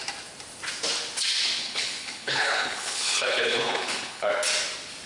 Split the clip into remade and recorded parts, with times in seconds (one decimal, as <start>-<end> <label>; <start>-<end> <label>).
0.0-1.6 recorded; 1.6-4.3 remade; 4.3-5.1 recorded